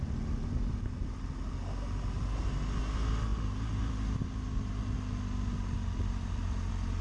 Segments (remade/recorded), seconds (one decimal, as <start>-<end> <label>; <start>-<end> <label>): 0.0-7.0 recorded